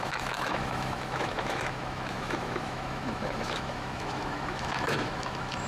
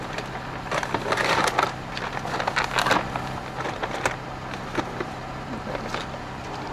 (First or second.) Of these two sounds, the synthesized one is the first